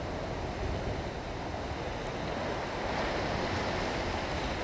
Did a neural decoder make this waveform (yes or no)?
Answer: no